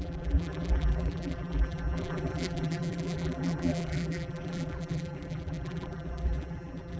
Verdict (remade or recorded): remade